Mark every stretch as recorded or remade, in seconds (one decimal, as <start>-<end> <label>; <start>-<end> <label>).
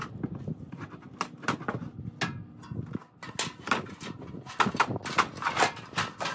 0.0-6.3 recorded